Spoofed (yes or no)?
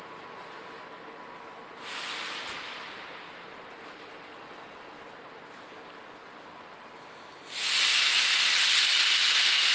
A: no